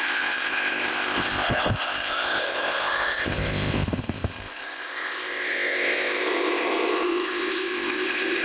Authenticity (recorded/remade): remade